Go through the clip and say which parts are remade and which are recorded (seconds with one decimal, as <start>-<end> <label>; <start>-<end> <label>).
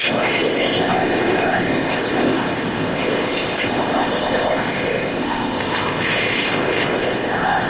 0.0-7.7 remade